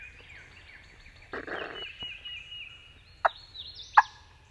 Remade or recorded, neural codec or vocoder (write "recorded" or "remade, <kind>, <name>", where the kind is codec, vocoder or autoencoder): recorded